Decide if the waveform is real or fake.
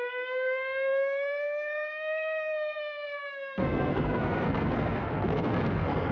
fake